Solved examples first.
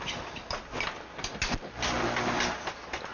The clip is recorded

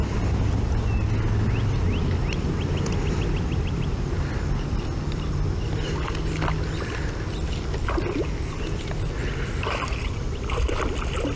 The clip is recorded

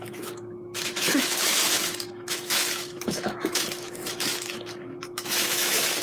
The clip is remade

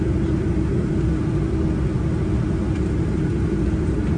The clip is recorded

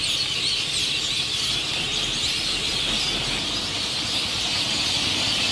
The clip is recorded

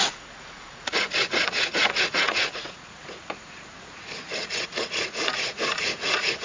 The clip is remade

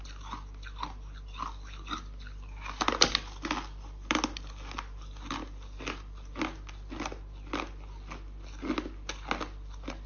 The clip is recorded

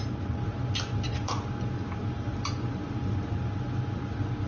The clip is recorded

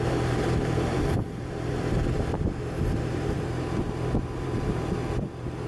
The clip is remade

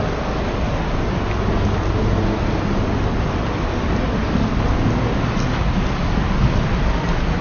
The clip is recorded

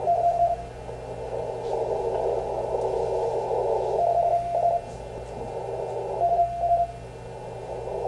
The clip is recorded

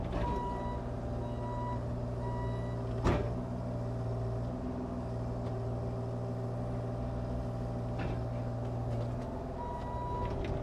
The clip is recorded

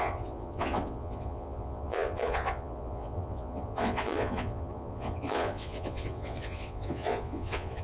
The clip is remade